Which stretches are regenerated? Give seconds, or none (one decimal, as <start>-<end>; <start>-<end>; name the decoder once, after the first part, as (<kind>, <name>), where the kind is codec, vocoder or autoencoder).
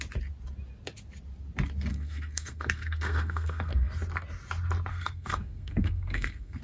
1.9-3.9 (codec, SNAC); 4.9-6.6